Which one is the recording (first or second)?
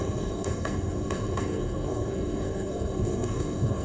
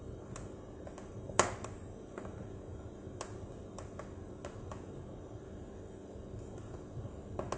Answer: second